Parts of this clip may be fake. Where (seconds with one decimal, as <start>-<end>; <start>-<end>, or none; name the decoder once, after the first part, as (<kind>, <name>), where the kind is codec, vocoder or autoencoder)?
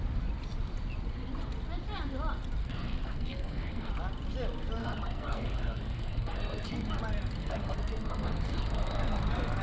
2.6-3.9 (codec, SNAC); 4.8-7.0; 7.4-9.2